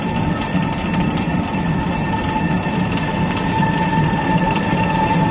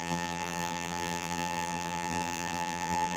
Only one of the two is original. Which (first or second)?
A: first